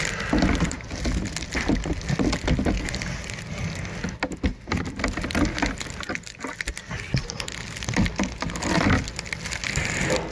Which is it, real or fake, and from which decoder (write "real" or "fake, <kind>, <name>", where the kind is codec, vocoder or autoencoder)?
real